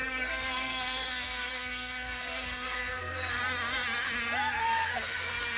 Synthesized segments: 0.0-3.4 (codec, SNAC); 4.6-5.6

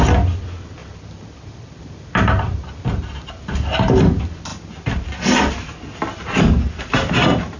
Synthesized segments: 0.8-4.1 (vocoder, BigVGAN v2)

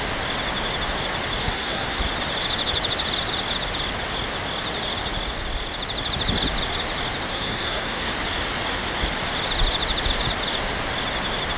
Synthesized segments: 1.4-2.0 (codec, SNAC); 7.3-8.1

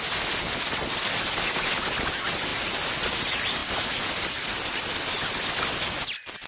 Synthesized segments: none